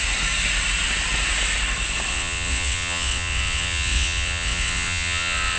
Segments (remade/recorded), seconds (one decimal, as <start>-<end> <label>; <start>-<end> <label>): 0.0-2.1 recorded; 2.1-5.6 remade